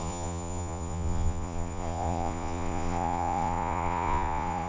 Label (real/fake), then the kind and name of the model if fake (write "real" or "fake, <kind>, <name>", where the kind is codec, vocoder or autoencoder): fake, vocoder, Vocos